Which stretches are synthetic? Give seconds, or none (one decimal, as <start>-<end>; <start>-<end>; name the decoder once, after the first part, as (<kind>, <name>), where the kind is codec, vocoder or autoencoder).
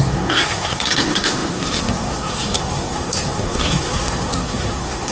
0.0-5.1 (codec, SNAC)